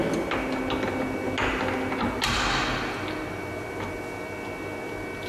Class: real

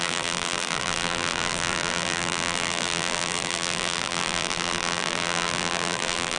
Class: fake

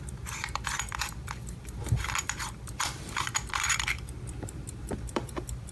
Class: fake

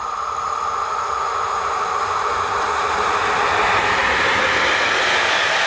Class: real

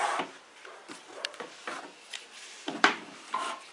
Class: fake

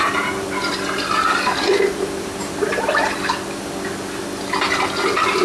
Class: real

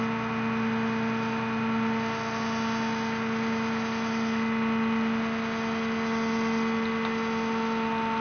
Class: real